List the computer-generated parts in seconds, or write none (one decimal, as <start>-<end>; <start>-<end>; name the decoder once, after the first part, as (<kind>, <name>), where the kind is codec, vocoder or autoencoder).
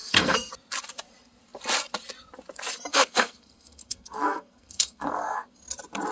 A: 0.0-0.5 (codec, SNAC); 2.9-5.5